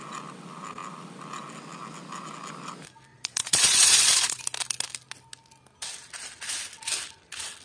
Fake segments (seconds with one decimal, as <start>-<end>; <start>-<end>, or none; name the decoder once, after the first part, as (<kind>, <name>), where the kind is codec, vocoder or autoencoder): 3.1-4.4 (vocoder, Vocos)